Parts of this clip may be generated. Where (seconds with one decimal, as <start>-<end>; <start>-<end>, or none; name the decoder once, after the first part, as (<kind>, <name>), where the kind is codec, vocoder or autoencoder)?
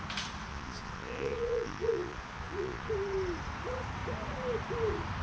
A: 0.5-2.9 (vocoder, Vocos)